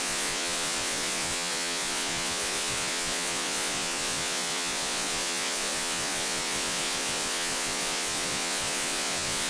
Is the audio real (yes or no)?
no